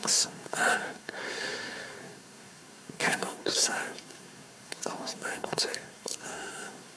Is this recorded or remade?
remade